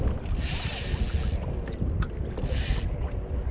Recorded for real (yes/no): yes